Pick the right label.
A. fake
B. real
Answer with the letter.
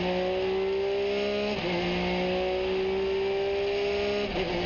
B